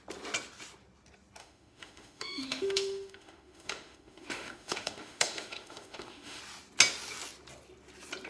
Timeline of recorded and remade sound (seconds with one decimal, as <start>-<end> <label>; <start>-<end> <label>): 0.0-1.4 recorded; 1.4-6.4 remade; 6.4-8.3 recorded